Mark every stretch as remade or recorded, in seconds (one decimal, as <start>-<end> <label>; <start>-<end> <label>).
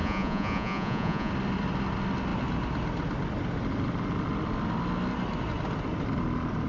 0.0-1.3 remade; 1.3-6.7 recorded